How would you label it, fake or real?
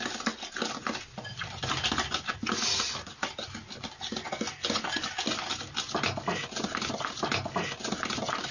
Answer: real